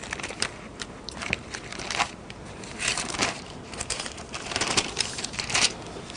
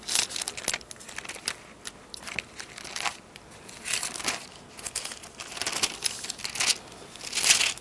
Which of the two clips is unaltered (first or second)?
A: second